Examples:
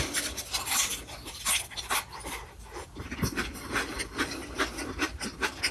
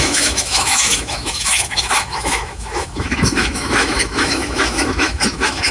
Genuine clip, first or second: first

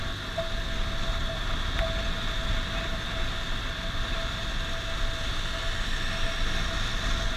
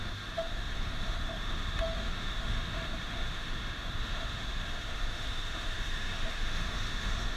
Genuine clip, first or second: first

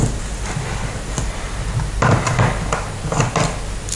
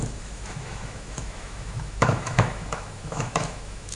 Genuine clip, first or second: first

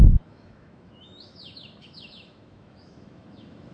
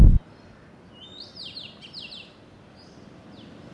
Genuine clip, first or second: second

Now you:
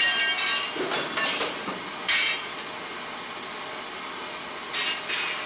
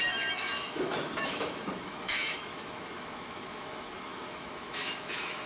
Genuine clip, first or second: first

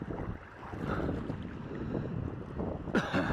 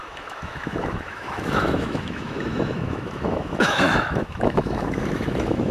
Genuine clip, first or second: first